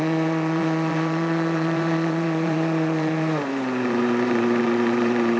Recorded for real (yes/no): no